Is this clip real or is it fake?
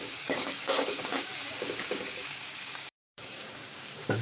fake